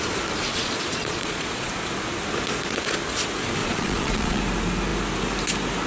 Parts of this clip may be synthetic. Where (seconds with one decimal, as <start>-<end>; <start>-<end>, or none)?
0.4-1.7; 3.6-4.4